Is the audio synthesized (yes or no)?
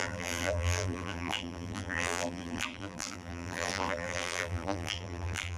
yes